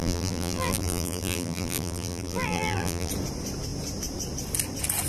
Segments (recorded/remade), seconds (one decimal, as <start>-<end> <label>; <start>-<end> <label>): 0.0-3.1 remade; 3.1-5.1 recorded